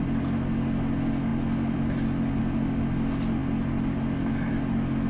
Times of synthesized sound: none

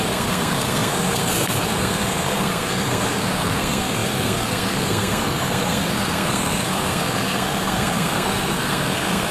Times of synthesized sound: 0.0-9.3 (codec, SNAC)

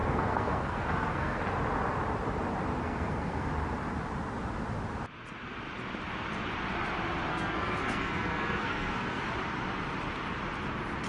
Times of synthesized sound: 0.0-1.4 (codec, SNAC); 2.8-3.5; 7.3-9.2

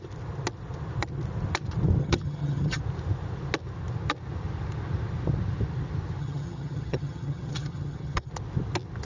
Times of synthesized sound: 2.0-2.8 (vocoder, HiFi-GAN); 6.2-8.3